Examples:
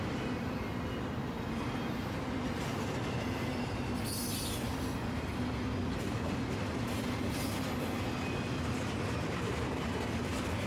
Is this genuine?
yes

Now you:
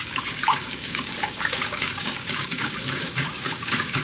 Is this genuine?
no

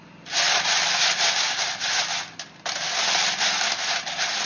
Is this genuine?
yes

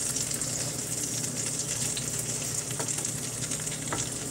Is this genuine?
yes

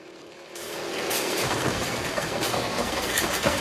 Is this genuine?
no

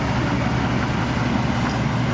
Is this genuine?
yes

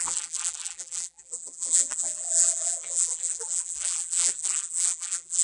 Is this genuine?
no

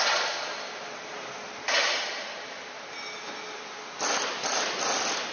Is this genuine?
yes